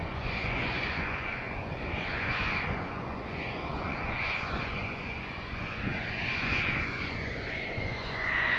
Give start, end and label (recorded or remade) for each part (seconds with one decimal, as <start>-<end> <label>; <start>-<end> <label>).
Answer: 0.0-8.6 remade